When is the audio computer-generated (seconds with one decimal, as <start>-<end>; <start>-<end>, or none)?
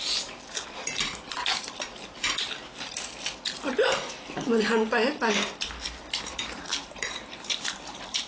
6.0-8.3